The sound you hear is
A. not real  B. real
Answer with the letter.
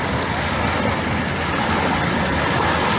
B